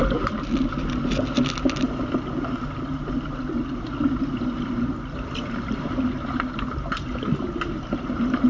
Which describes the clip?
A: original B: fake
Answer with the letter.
A